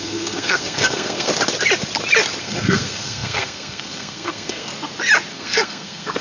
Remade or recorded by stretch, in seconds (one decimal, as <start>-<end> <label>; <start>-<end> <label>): 0.0-1.3 remade; 1.3-2.4 recorded; 2.4-4.7 remade; 4.7-5.3 recorded; 5.3-6.2 remade